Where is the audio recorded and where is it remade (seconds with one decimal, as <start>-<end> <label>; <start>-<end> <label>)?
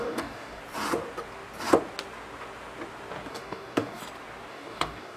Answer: 0.0-0.6 remade; 0.6-3.3 recorded; 3.3-4.0 remade; 4.0-4.5 recorded; 4.5-5.2 remade